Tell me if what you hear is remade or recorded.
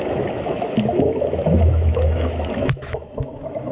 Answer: remade